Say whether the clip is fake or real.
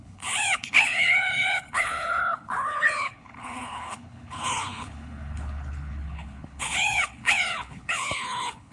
fake